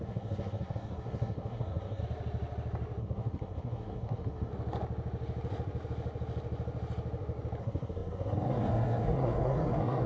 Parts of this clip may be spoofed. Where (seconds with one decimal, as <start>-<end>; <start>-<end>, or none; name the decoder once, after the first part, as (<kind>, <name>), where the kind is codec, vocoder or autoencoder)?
0.0-2.0 (codec, SNAC); 3.0-4.5; 7.6-10.1